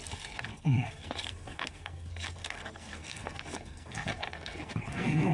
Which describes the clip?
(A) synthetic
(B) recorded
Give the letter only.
A